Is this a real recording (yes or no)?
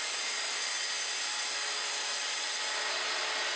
yes